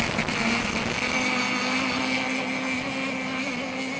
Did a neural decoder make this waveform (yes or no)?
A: yes